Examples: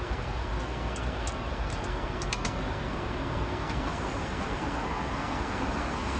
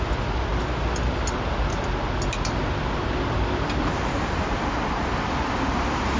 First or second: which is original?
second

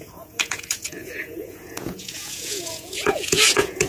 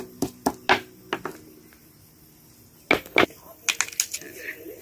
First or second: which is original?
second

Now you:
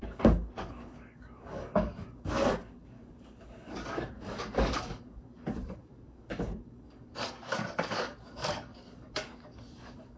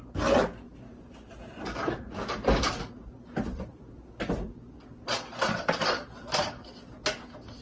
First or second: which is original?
second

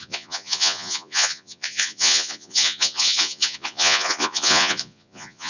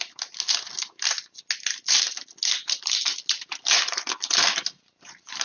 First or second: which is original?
second